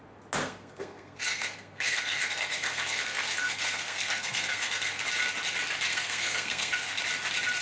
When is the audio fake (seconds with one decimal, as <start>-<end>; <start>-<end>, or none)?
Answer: 0.4-5.0; 5.9-7.0